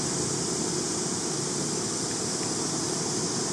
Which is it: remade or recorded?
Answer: recorded